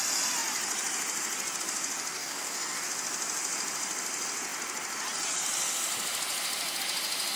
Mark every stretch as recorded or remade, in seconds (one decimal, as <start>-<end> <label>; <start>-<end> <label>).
0.0-2.1 recorded; 2.1-2.9 remade; 2.9-7.4 recorded

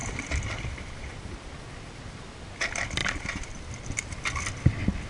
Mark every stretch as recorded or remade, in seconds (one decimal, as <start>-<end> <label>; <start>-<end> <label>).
0.0-2.5 remade; 2.5-3.0 recorded; 3.0-3.9 remade; 3.9-5.1 recorded